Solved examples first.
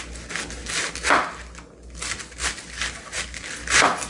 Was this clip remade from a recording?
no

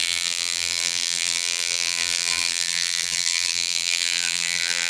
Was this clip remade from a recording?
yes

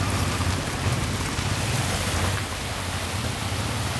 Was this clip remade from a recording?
no